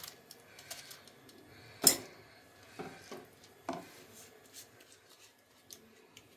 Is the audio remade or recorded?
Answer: recorded